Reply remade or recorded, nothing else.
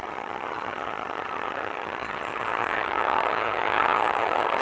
remade